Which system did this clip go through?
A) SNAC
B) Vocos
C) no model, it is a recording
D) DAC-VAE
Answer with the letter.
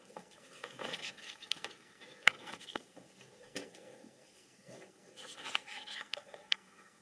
A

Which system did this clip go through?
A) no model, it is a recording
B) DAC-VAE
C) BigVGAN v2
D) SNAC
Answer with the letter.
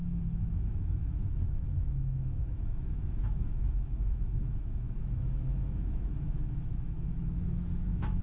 B